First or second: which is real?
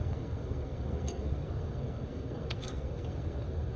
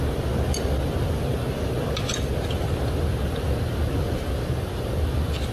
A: second